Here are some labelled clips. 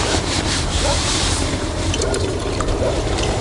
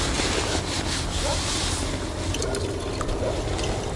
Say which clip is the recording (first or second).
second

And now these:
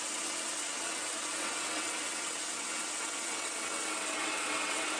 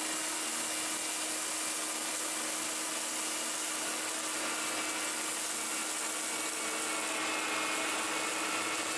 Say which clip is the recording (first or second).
second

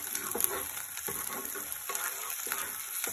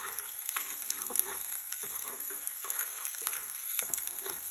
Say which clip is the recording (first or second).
first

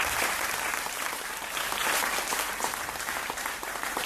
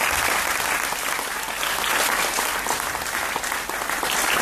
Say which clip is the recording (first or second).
second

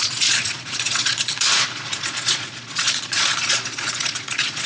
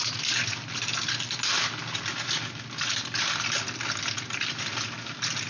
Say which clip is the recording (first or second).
second